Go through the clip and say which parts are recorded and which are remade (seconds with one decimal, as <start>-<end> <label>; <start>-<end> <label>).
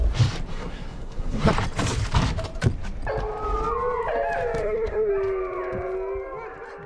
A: 0.0-0.5 recorded; 0.5-1.5 remade; 1.5-4.6 recorded; 4.6-5.1 remade; 5.1-6.9 recorded